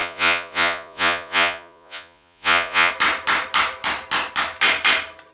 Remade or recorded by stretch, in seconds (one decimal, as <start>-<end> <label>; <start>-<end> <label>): 0.0-2.9 remade; 2.9-5.3 recorded